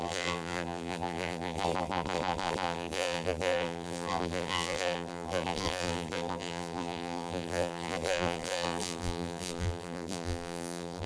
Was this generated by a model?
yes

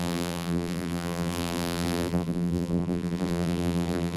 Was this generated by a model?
yes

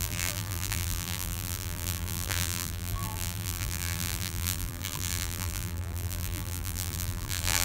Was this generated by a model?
yes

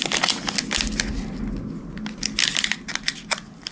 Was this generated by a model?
no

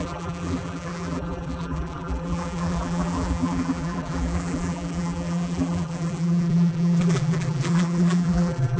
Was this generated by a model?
yes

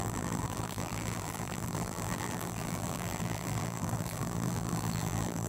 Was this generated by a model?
yes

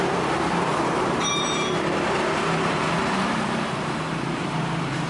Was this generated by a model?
yes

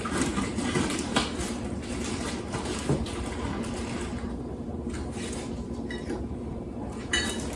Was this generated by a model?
yes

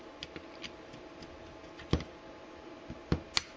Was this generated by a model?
no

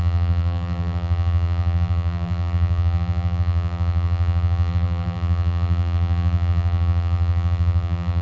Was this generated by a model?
yes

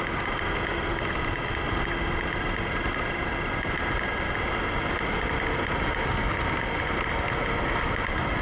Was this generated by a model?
no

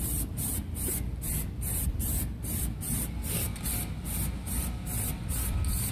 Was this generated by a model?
no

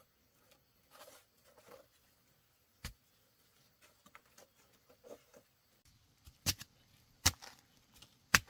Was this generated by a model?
yes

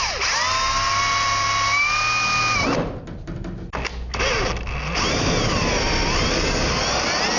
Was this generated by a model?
no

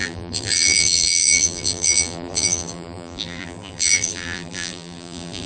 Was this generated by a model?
yes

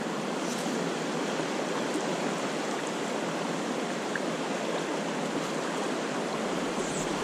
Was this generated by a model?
no